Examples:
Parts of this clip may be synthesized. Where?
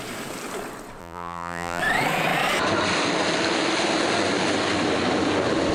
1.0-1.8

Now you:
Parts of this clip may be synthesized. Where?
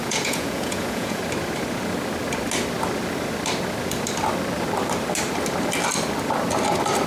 0.0-1.2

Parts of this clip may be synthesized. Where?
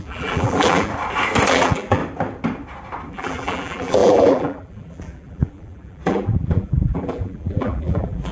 0.0-0.9; 1.5-2.0; 3.1-8.3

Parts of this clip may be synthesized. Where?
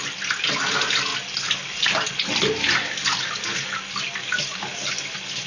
none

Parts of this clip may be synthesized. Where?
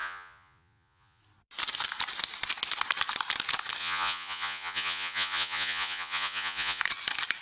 0.0-1.2; 3.8-6.8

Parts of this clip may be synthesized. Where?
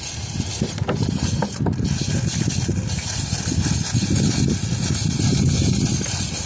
none